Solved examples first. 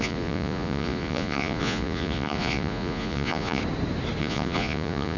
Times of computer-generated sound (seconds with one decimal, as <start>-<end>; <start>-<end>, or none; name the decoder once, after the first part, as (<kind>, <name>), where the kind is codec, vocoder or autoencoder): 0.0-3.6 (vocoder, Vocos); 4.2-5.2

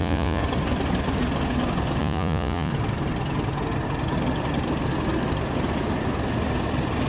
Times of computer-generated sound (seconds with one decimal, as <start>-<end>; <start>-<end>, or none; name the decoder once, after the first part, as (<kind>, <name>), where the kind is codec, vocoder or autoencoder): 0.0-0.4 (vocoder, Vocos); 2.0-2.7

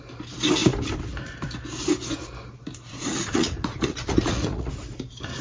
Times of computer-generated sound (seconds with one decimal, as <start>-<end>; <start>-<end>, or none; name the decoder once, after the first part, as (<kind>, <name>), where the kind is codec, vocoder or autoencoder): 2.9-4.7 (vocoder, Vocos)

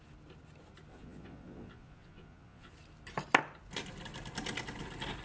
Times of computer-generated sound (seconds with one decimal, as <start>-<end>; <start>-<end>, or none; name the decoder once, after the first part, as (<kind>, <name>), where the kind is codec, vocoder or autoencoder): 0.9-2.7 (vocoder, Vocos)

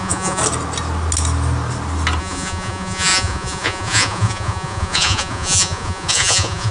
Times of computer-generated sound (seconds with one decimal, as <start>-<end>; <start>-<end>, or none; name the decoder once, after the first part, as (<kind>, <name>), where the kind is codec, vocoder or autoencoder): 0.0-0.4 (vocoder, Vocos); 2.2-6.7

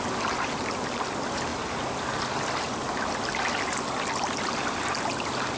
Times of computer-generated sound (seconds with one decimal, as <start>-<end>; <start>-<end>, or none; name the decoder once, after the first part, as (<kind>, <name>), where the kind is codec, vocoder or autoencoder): none